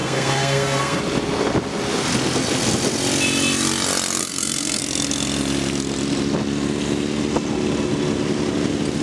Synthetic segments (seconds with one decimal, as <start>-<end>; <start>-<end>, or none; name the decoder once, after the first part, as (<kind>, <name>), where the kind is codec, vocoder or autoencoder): 0.0-1.0 (codec, SNAC); 4.2-4.8